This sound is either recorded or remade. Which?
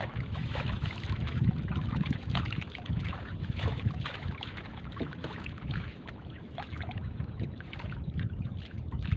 remade